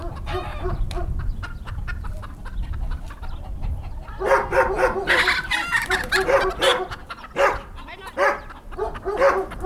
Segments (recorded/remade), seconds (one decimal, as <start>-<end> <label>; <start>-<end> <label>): 0.0-6.7 recorded; 6.7-8.0 remade; 8.0-9.7 recorded